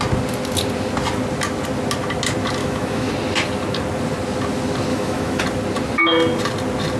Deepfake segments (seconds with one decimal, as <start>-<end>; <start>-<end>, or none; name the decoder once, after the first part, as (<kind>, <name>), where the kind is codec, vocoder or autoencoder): 2.6-3.1 (autoencoder, DAC-VAE); 4.9-5.4